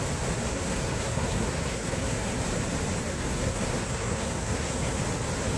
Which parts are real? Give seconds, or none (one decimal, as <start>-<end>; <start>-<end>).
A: 0.0-0.5; 2.4-3.1; 5.0-5.6